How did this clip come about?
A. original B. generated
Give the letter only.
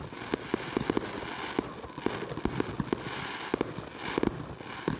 A